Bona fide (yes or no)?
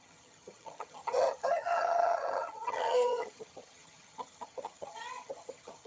no